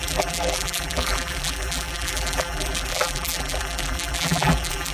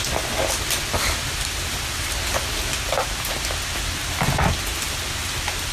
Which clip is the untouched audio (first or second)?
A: second